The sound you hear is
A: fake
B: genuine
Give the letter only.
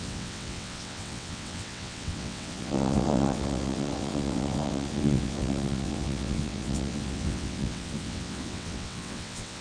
A